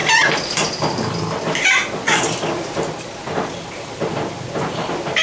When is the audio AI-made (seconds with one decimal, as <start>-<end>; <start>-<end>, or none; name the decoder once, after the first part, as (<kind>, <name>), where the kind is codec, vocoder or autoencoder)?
0.8-1.8 (vocoder, BigVGAN v2); 3.7-5.2